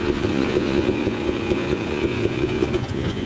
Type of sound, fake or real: fake